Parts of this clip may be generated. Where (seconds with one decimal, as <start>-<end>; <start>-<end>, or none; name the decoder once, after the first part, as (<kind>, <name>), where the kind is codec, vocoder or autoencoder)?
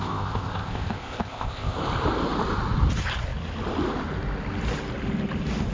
0.0-1.8 (codec, ZipCodec)